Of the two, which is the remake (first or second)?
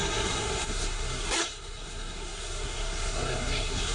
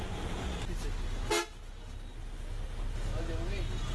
first